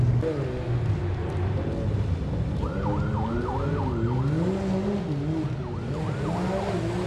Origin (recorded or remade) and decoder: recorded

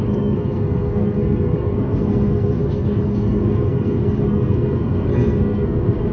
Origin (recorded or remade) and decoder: remade, codec, SNAC